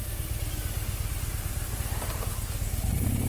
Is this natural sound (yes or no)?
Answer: no